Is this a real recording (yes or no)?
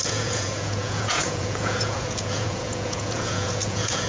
no